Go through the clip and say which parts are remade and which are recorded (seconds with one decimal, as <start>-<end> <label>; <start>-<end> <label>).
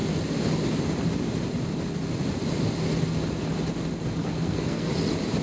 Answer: 0.0-4.2 recorded; 4.2-4.9 remade; 4.9-5.4 recorded